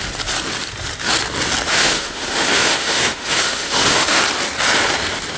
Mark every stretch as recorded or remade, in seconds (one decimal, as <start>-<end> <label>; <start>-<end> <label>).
0.0-1.7 recorded; 1.7-4.2 remade; 4.2-5.4 recorded